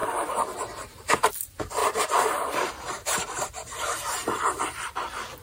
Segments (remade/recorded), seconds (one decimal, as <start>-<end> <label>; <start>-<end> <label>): 0.0-1.3 remade; 1.3-1.8 recorded; 1.8-4.6 remade; 4.6-5.4 recorded